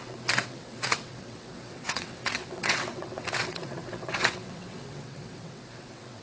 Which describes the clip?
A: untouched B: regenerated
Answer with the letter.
B